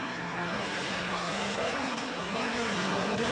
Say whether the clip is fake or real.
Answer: fake